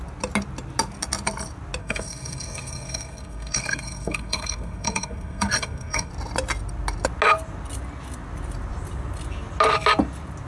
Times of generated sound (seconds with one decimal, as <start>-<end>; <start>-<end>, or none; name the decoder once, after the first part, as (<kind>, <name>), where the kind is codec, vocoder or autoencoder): 1.8-6.1 (codec, SNAC)